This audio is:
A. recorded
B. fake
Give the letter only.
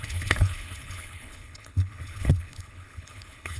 B